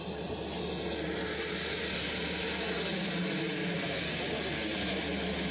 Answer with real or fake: real